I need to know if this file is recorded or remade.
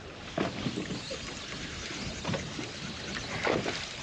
recorded